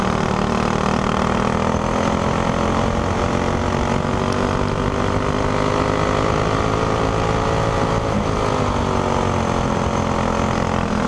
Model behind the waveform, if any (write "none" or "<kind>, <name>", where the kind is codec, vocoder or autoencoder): none